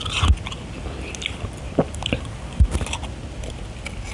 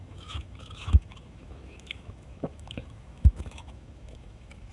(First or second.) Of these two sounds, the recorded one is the first